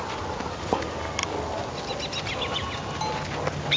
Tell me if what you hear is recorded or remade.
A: recorded